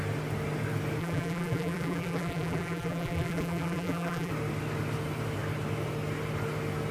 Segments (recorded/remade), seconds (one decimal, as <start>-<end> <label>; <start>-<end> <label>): 0.0-1.0 recorded; 1.0-4.3 remade; 4.3-6.9 recorded